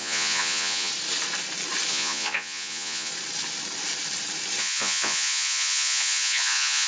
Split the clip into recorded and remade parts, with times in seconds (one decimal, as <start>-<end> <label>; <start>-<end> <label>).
0.0-0.9 remade; 0.9-1.9 recorded; 1.9-3.1 remade; 3.1-4.6 recorded; 4.6-6.9 remade